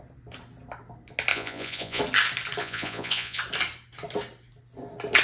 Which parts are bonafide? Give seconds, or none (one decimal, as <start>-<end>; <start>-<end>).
0.0-1.3; 2.0-2.6; 3.4-5.2